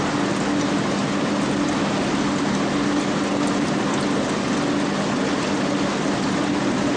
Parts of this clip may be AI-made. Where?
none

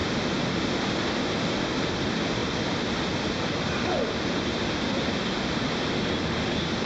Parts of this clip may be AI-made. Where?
0.0-1.7 (vocoder, BigVGAN v2); 2.4-5.4

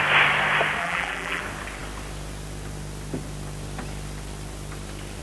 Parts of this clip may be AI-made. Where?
0.8-1.4 (vocoder, BigVGAN v2)

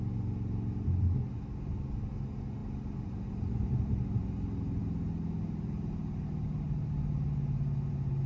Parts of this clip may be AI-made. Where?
none

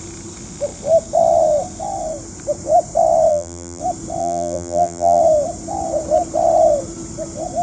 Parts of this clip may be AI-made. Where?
3.3-3.8 (vocoder, BigVGAN v2); 4.2-5.2